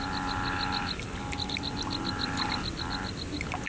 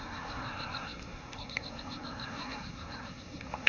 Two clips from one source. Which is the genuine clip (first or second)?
first